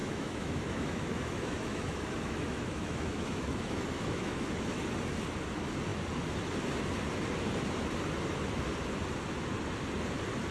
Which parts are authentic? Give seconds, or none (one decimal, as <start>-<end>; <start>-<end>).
4.8-10.5